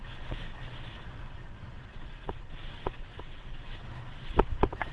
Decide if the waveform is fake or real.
fake